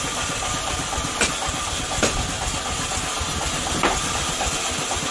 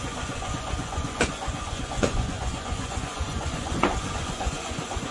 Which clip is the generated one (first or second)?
second